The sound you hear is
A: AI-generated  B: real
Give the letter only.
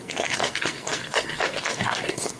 A